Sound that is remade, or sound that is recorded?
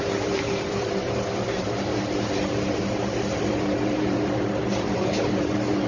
remade